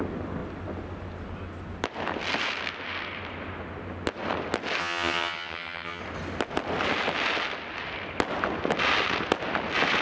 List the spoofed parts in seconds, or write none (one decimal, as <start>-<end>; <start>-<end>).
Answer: 4.8-6.0